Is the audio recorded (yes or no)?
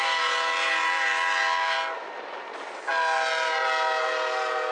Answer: yes